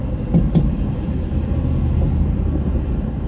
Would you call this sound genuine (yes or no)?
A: yes